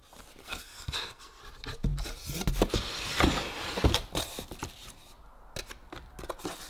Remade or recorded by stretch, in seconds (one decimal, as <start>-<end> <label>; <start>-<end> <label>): 0.0-0.4 recorded; 0.4-1.4 remade; 1.4-6.7 recorded